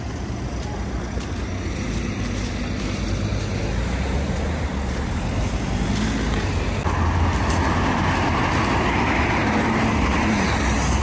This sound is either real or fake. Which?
real